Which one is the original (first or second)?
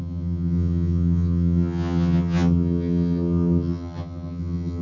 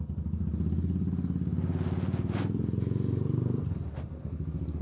second